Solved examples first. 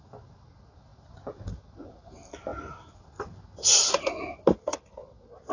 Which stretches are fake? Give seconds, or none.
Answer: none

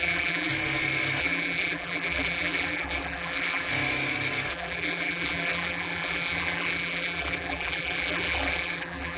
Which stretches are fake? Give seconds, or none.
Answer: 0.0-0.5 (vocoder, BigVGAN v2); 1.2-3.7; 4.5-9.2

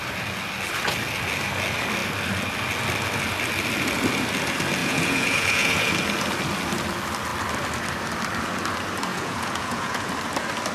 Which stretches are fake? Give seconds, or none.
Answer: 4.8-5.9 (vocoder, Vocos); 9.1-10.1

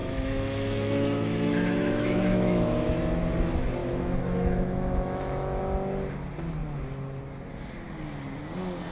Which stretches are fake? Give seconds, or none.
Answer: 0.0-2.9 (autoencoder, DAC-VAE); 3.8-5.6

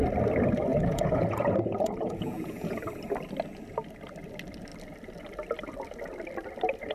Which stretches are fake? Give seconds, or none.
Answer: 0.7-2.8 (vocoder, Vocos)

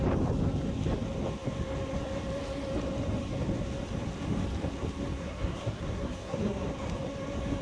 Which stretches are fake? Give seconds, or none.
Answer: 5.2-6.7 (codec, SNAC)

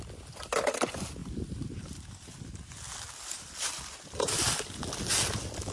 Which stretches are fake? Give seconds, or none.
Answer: none

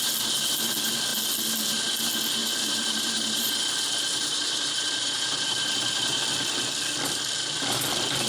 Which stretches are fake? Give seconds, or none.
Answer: 2.4-3.5 (vocoder, BigVGAN v2); 4.1-6.2